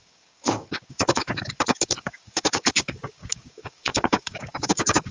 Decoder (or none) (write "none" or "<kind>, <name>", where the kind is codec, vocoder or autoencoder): codec, DAC